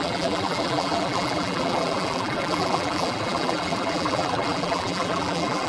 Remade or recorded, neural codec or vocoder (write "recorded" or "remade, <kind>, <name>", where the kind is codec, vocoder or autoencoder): remade, vocoder, BigVGAN v2